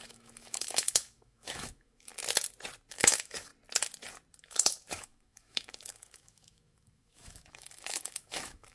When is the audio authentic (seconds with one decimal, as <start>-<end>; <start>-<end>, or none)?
2.1-2.9; 3.5-4.4